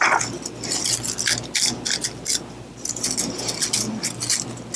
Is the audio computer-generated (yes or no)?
no